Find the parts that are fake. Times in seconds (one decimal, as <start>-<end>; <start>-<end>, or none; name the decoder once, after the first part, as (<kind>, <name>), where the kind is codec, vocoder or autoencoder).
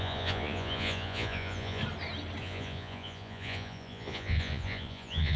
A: 0.0-1.8 (vocoder, Vocos); 2.4-5.4